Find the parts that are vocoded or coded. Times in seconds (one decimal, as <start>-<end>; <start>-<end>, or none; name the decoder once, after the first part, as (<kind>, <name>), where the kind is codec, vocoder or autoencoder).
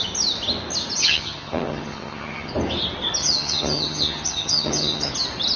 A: 1.0-2.5 (vocoder, HiFi-GAN); 3.2-5.1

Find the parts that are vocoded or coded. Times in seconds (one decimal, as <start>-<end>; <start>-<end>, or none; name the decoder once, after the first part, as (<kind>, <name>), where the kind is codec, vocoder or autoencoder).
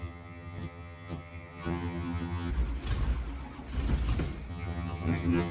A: 0.0-2.5 (vocoder, HiFi-GAN); 4.5-5.5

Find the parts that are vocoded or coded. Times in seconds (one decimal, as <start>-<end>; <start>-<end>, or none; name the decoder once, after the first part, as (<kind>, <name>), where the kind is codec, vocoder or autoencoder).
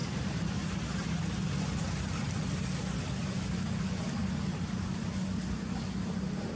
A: none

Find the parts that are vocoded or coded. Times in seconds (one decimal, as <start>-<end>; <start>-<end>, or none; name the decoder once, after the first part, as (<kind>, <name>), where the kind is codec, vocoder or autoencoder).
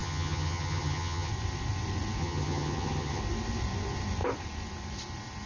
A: 0.0-1.3 (vocoder, HiFi-GAN); 2.2-3.2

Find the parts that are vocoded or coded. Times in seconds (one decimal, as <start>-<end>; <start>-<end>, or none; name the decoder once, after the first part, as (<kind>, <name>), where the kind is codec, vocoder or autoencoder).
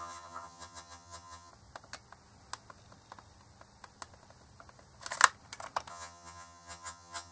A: 0.0-1.5 (vocoder, HiFi-GAN); 5.9-7.3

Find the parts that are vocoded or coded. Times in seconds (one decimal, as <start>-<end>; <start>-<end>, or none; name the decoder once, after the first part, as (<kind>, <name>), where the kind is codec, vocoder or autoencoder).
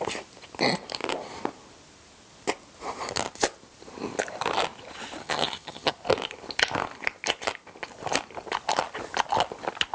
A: 5.2-5.9 (vocoder, HiFi-GAN)